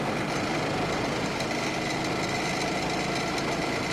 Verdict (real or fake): real